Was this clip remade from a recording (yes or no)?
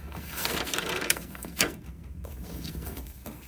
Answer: yes